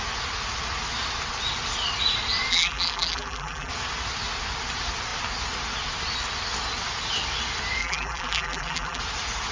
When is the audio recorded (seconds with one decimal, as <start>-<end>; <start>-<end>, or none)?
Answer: 0.0-2.5; 3.7-7.8; 9.0-9.5